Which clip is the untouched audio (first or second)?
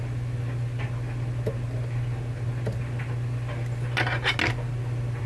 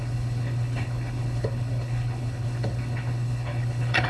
first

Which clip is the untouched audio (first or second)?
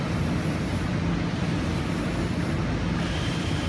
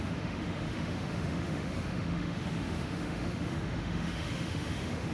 first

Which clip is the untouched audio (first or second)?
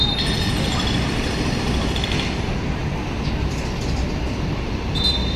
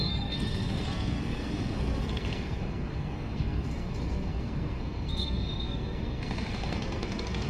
first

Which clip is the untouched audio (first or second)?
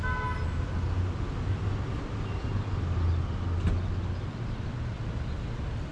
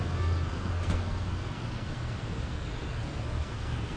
first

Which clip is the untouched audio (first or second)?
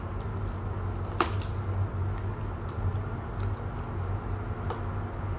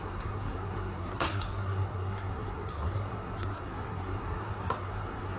first